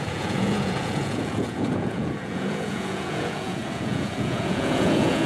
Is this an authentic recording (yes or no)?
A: no